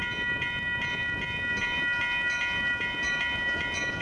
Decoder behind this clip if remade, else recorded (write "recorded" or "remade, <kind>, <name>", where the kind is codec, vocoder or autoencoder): recorded